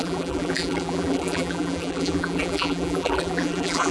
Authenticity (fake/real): fake